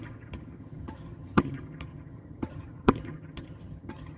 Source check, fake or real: fake